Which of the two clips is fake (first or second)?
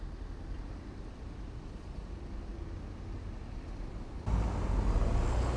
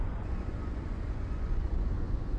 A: second